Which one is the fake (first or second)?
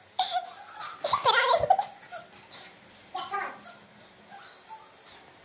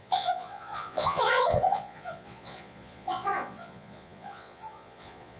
second